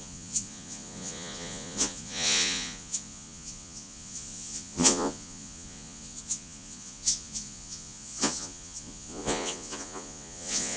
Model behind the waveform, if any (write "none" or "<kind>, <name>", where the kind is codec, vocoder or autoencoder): vocoder, Vocos